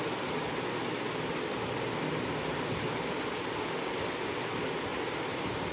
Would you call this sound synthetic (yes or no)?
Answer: no